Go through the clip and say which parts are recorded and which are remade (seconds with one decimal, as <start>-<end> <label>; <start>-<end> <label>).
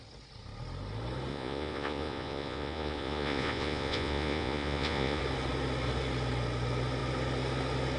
0.0-1.3 recorded; 1.3-5.2 remade; 5.2-8.0 recorded